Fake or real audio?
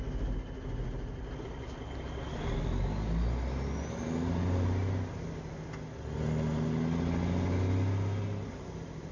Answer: real